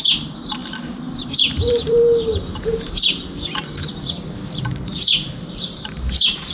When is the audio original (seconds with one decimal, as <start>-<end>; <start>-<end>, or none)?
none